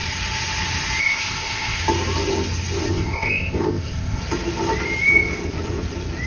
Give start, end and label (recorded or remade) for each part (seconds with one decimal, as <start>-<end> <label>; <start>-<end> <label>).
0.0-1.0 recorded; 1.0-1.8 remade; 1.8-2.9 recorded; 2.9-4.2 remade; 4.2-6.3 recorded